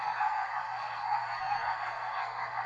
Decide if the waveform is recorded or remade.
remade